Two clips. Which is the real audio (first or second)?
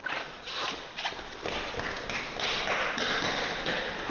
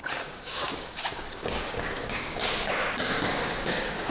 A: first